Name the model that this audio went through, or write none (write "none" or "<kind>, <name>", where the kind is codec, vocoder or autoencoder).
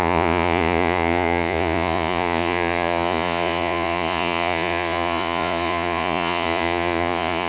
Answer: vocoder, Vocos